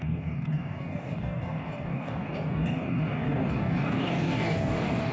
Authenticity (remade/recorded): remade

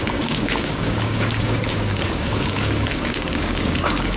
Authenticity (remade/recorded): remade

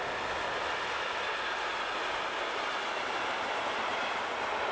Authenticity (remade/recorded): recorded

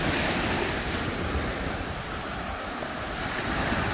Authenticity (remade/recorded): recorded